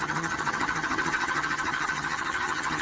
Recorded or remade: remade